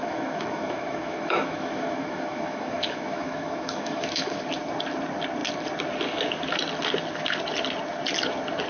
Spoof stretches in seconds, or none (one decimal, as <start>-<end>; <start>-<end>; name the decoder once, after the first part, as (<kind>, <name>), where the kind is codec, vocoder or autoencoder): 0.0-4.4 (autoencoder, DAC-VAE)